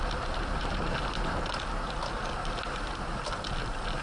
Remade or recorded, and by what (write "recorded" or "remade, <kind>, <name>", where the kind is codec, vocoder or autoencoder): recorded